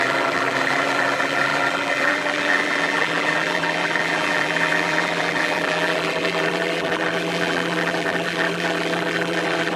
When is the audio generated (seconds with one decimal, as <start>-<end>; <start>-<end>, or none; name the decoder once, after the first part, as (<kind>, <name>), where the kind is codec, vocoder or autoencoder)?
0.0-9.8 (vocoder, BigVGAN v2)